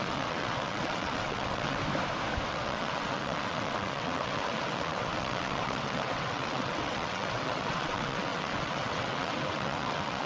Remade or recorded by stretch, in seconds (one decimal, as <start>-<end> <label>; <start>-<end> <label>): 0.0-1.8 remade; 1.8-2.5 recorded; 2.5-10.3 remade